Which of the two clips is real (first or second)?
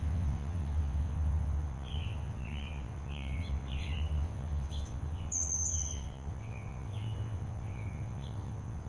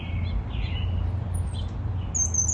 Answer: second